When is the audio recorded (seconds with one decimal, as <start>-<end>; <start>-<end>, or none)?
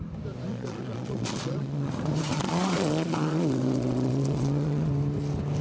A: 0.0-0.5; 1.9-2.3; 4.9-5.6